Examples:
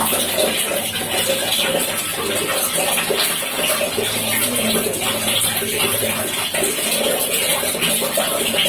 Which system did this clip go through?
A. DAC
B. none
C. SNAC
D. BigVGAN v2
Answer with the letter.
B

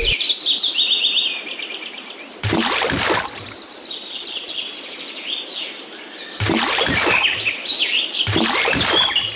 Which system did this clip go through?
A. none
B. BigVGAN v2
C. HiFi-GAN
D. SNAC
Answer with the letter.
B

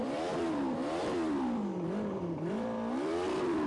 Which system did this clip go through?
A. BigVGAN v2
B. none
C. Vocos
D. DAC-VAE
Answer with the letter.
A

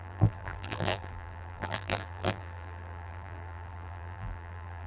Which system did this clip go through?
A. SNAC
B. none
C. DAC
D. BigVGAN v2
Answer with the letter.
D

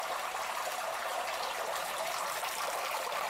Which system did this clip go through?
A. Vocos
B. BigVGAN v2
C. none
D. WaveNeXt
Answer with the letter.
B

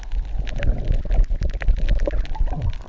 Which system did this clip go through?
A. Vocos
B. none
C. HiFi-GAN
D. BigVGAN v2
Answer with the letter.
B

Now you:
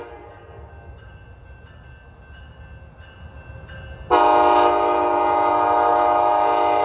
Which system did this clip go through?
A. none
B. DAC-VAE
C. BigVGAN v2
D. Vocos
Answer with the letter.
A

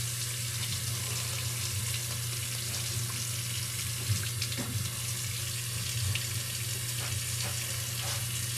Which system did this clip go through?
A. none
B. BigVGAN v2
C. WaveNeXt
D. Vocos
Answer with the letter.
A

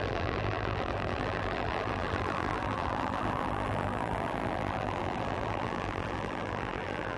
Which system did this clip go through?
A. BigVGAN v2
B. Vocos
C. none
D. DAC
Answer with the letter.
A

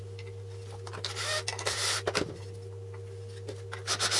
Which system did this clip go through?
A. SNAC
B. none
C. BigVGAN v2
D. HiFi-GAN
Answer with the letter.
B